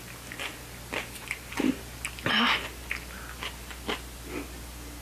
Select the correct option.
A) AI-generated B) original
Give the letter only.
B